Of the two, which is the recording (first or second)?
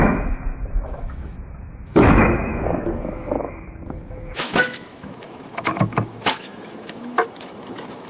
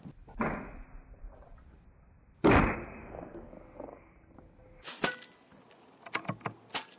second